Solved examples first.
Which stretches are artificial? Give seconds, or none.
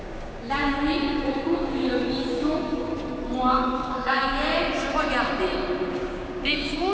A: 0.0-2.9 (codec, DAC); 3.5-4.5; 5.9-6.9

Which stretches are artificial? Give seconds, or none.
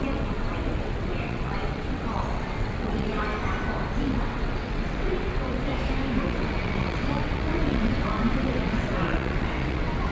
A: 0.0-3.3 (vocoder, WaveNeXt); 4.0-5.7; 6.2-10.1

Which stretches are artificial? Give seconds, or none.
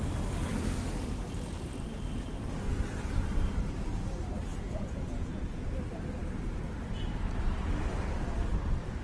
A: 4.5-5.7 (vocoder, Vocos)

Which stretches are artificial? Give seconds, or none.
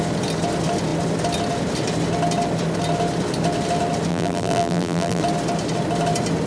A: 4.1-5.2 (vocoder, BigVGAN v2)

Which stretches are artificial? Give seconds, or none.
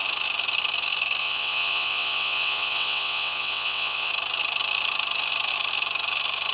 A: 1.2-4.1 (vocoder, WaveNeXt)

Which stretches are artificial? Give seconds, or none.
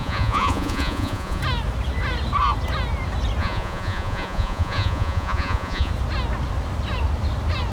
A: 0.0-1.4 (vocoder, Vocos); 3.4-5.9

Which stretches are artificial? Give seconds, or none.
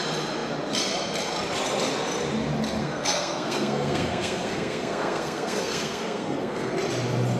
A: 2.8-6.7 (codec, SNAC)